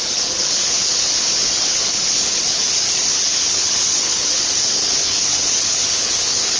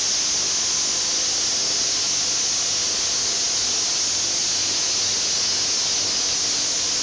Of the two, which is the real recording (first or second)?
second